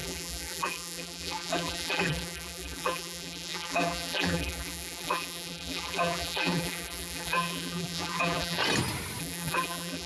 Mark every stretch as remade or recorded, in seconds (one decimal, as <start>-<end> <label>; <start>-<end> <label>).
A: 0.0-8.6 remade; 8.6-9.2 recorded; 9.2-10.1 remade